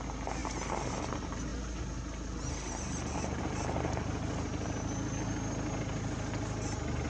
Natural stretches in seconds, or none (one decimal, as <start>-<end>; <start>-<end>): 0.0-7.1